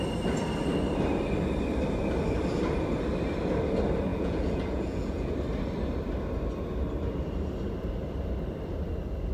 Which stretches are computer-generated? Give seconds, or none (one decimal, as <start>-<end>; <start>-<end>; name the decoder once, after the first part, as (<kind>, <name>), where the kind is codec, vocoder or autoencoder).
4.1-5.3 (vocoder, Vocos)